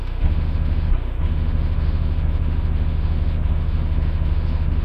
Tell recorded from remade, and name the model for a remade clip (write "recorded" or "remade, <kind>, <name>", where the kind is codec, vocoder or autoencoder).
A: remade, autoencoder, DAC-VAE